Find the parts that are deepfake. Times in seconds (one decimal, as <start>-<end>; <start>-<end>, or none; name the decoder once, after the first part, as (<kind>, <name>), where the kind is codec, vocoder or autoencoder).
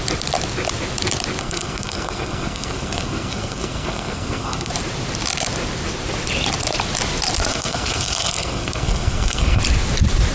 1.4-4.7 (codec, SNAC); 7.5-9.6